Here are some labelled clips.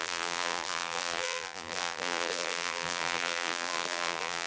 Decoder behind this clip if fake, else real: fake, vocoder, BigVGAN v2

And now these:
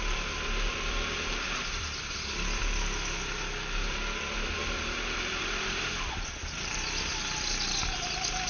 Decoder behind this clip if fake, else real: fake, vocoder, BigVGAN v2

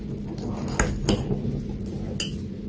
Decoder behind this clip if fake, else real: real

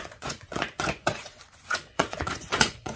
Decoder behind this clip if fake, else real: fake, vocoder, Vocos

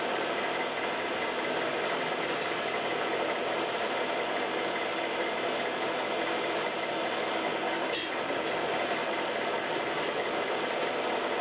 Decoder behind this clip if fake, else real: real